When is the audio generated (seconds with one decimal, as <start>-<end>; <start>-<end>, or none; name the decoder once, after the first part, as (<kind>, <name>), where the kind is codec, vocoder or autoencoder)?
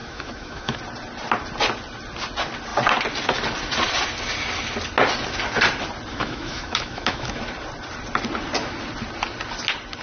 0.0-0.8 (autoencoder, DAC-VAE); 6.1-7.4